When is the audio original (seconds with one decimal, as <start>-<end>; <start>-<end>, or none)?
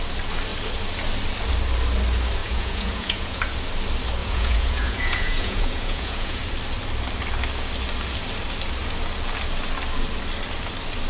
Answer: 0.0-2.4; 3.4-4.2; 6.4-11.1